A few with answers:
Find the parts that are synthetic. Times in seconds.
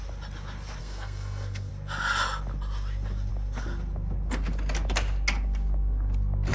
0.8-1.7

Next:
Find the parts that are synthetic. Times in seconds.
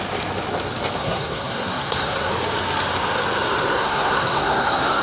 1.0-2.3; 3.7-5.0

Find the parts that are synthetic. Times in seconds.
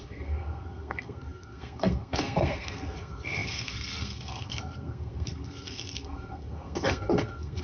0.0-7.6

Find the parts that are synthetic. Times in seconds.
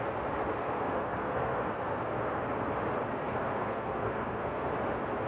0.6-2.4; 3.1-4.7